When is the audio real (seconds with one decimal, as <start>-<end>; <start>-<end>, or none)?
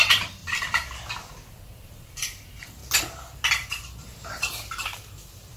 0.4-1.5; 2.8-3.5